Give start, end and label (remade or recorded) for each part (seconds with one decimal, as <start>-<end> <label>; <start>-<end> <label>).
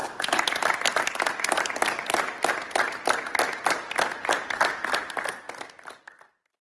0.0-6.7 recorded